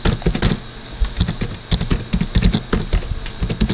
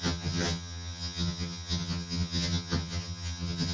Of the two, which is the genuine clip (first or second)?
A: first